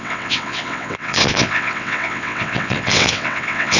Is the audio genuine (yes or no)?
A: no